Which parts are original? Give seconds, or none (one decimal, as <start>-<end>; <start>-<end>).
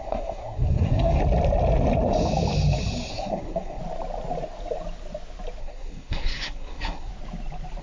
1.2-3.1; 3.8-5.6; 7.1-7.8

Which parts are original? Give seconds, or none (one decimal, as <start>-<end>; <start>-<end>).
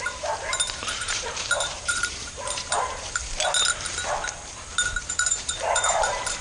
3.2-5.0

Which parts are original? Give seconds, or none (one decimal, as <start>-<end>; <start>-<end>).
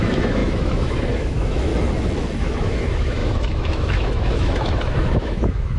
1.7-2.4